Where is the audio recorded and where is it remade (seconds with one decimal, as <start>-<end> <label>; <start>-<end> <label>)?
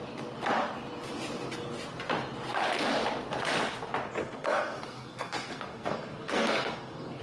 0.0-4.2 recorded; 4.2-7.2 remade